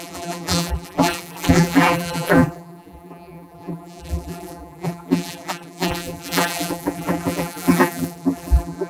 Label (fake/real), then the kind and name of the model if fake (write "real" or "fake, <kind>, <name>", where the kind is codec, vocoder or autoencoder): fake, vocoder, BigVGAN v2